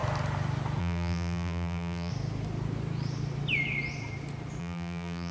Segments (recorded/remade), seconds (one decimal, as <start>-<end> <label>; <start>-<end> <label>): 0.0-0.8 recorded; 0.8-2.1 remade; 2.1-4.6 recorded; 4.6-5.3 remade